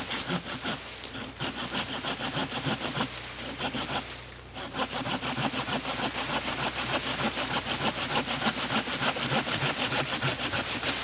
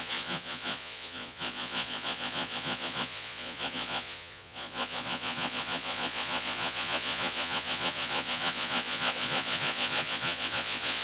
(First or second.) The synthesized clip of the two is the second